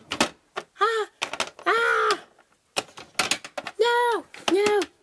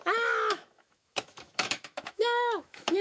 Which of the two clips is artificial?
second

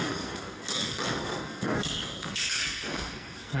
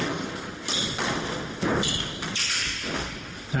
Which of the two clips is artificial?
first